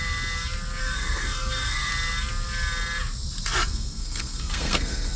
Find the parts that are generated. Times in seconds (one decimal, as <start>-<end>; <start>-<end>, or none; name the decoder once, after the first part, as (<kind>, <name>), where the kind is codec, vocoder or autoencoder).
0.8-1.9 (codec, SNAC); 3.7-5.2